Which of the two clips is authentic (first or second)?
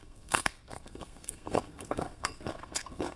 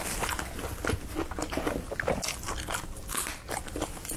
second